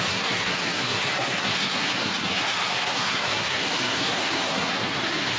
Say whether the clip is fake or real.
fake